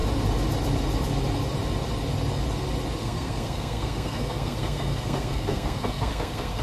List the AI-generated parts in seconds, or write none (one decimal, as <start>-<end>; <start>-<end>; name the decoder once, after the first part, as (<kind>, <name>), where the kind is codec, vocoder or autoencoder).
3.0-6.6 (codec, SNAC)

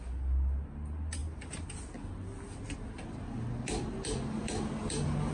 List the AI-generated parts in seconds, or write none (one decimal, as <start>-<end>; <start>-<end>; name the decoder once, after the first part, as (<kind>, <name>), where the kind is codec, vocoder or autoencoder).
none